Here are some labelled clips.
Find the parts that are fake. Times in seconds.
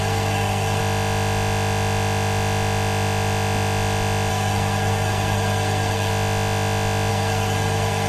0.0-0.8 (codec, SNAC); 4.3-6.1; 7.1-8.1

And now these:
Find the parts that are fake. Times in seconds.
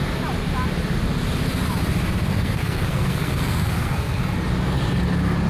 2.3-4.3 (codec, SNAC)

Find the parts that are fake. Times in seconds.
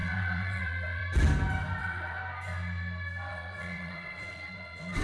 0.0-1.0 (vocoder, WaveNeXt); 1.8-2.2; 3.3-5.0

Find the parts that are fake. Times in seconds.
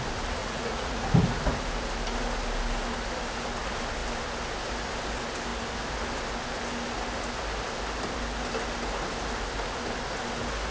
0.4-1.0 (vocoder, Vocos)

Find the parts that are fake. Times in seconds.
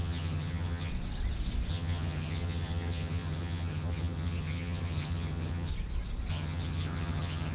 0.0-0.9 (vocoder, HiFi-GAN); 1.7-5.7; 6.3-7.5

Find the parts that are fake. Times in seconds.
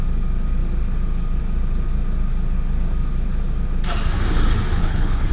4.8-5.3 (codec, HILCodec)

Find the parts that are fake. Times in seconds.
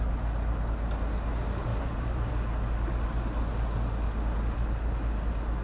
1.7-2.3 (vocoder, BigVGAN v2)